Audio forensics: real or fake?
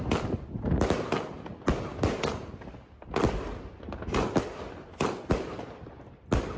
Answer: real